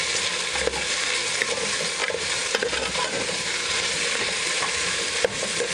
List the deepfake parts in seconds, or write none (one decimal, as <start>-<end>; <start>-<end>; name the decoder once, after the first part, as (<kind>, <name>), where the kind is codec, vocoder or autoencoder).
2.0-5.7 (vocoder, BigVGAN v2)